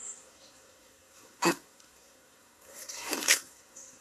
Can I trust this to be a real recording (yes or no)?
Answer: no